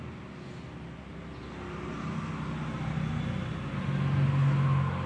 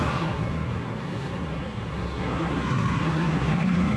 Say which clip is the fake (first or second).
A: second